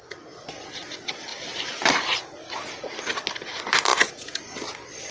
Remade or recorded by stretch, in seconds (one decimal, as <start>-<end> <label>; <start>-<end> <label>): 0.0-3.9 recorded; 3.9-4.4 remade; 4.4-5.1 recorded